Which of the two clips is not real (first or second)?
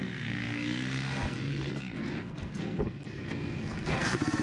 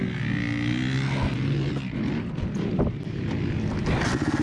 first